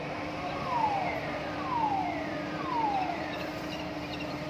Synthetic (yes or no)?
yes